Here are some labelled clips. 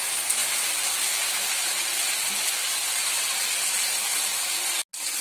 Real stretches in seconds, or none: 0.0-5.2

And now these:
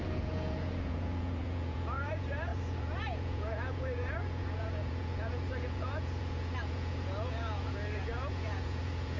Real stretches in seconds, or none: none

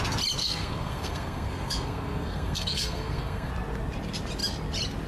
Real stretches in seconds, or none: 0.0-0.4; 3.5-5.1

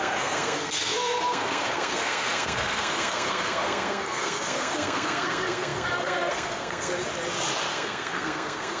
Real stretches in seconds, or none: 6.9-7.7

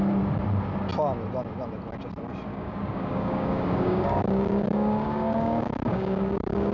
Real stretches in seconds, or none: 0.0-2.5